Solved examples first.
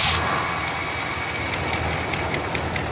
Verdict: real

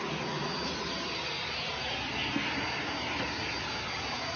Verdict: real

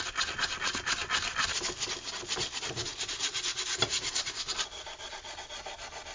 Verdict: real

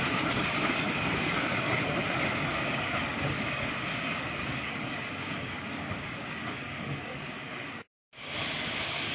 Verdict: fake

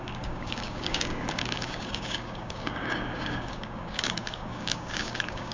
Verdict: fake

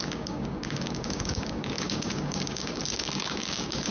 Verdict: fake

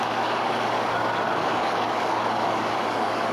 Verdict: fake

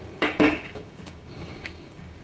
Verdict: fake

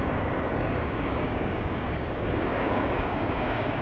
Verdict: fake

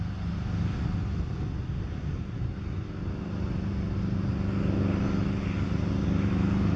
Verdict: real